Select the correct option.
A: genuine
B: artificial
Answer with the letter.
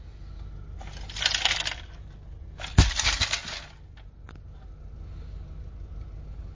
A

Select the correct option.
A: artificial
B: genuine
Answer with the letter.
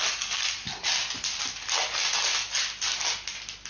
B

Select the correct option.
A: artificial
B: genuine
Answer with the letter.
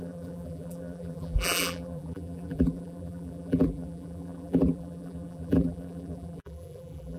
A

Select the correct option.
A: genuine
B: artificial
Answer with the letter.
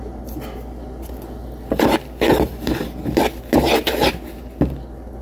A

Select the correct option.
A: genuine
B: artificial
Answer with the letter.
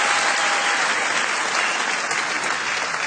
A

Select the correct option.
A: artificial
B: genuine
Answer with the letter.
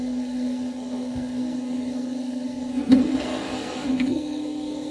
A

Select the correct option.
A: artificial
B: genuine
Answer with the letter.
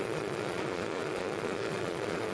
A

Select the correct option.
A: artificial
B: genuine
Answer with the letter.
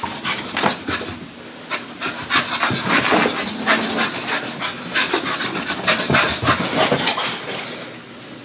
B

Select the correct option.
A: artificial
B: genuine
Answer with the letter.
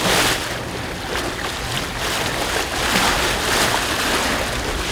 B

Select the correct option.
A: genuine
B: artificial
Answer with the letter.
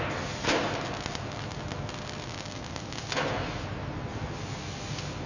A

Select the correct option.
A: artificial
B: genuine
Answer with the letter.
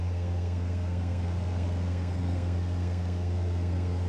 A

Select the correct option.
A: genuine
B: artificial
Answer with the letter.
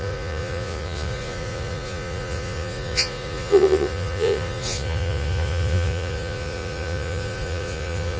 B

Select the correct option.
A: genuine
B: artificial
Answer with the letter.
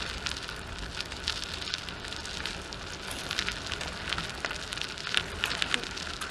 A